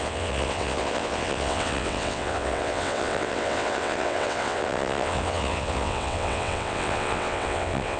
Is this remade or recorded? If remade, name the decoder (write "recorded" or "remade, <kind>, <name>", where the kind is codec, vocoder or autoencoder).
remade, vocoder, WaveNeXt